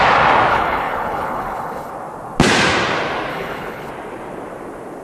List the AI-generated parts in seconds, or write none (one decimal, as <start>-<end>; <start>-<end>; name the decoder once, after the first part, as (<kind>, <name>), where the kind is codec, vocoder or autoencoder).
0.5-1.9 (codec, HILCodec); 3.3-3.9